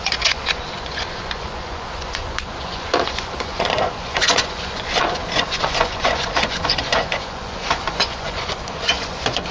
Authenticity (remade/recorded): remade